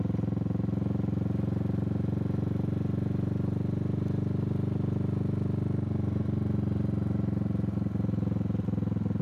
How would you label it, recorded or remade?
recorded